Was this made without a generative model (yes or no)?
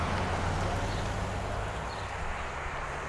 yes